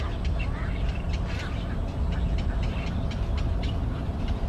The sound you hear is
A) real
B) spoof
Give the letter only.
A